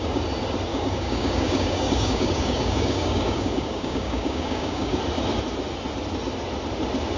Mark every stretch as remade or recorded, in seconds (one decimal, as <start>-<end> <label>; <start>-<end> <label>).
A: 0.0-0.7 recorded; 0.7-5.0 remade; 5.0-7.2 recorded